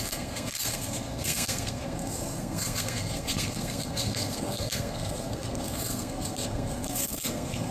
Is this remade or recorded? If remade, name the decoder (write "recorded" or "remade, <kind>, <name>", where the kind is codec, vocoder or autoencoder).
remade, codec, SNAC